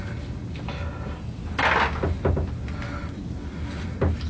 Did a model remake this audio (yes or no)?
no